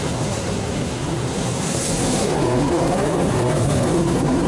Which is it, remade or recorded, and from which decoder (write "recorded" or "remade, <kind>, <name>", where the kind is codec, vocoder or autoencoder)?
remade, codec, SNAC